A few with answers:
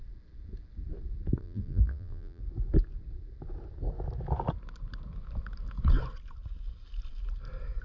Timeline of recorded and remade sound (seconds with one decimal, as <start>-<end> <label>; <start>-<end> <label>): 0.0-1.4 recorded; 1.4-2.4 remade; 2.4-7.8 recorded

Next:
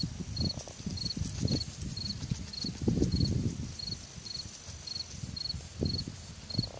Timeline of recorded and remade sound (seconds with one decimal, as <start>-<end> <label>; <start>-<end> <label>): 0.0-6.8 recorded

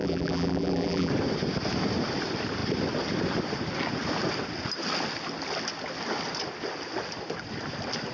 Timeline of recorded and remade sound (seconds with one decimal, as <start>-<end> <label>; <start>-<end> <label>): 0.0-1.1 remade; 1.1-8.1 recorded

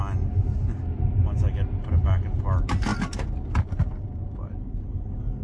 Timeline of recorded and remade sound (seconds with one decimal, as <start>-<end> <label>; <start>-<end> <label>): 0.0-2.9 recorded; 2.9-3.7 remade; 3.7-5.4 recorded

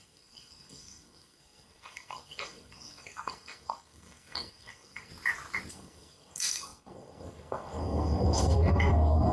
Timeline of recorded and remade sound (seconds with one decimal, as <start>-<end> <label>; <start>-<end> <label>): 0.0-5.1 remade; 5.1-5.7 recorded; 5.7-9.3 remade

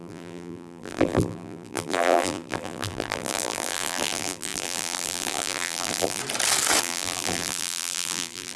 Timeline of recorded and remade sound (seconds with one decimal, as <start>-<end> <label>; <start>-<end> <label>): 0.0-6.2 remade; 6.2-6.8 recorded; 6.8-8.6 remade

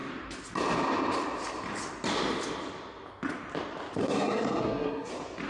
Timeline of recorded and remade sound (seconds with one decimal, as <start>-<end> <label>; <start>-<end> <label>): 0.0-4.0 recorded; 4.0-5.1 remade; 5.1-5.5 recorded